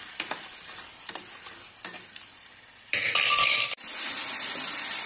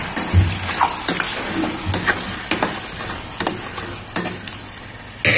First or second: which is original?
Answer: second